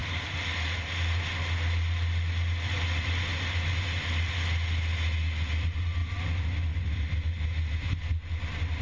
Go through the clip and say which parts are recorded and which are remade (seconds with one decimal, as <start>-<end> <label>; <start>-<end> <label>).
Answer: 0.0-8.8 recorded